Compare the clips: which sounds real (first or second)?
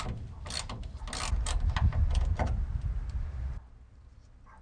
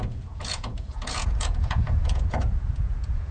first